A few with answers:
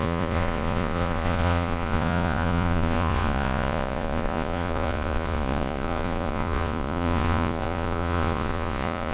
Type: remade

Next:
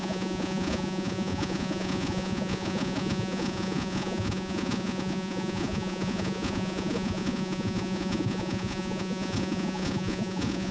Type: remade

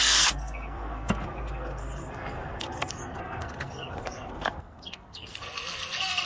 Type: remade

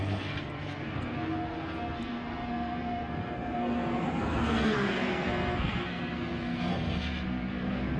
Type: remade